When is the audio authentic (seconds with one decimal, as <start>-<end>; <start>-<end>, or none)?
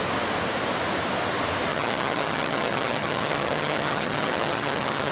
0.0-1.7